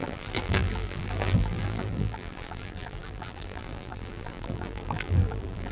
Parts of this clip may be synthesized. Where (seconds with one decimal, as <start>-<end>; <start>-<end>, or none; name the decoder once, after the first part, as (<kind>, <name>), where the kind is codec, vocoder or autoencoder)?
0.0-5.7 (vocoder, BigVGAN v2)